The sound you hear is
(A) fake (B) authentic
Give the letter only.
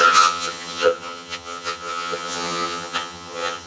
A